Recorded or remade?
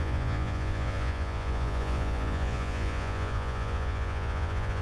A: remade